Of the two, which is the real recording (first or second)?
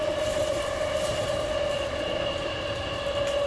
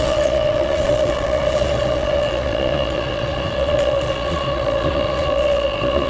first